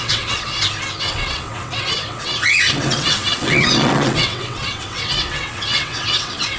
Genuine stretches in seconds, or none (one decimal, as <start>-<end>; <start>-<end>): 0.5-1.0